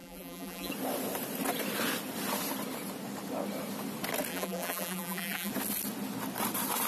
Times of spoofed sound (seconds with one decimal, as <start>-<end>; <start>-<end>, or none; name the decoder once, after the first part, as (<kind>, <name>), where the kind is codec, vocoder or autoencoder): 0.0-0.7 (vocoder, BigVGAN v2); 4.3-5.5